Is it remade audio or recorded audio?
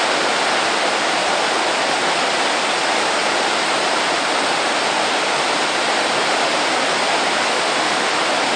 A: recorded